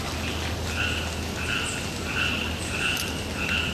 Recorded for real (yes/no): yes